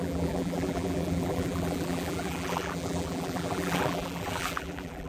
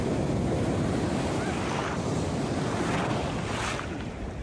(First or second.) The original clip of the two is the second